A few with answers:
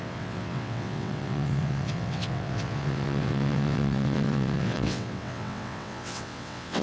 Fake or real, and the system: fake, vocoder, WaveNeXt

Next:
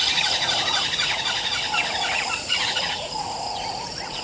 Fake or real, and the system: fake, vocoder, Vocos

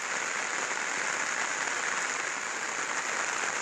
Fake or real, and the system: real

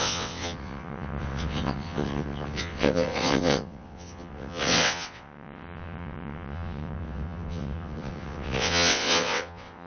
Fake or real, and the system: fake, vocoder, WaveNeXt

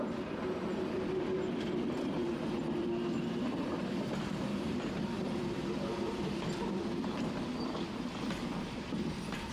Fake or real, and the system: fake, vocoder, BigVGAN v2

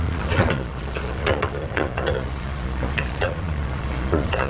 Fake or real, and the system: fake, vocoder, Vocos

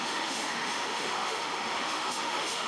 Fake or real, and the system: fake, autoencoder, DAC-VAE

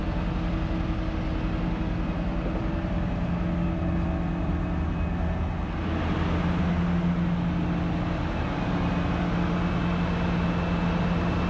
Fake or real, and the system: real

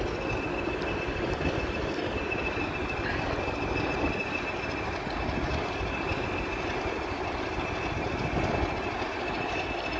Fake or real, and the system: real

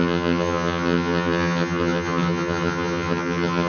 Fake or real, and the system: fake, vocoder, HiFi-GAN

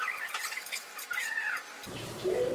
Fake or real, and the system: fake, vocoder, BigVGAN v2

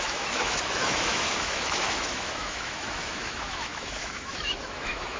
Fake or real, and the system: fake, autoencoder, DAC-VAE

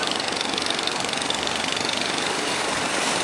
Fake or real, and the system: fake, codec, DAC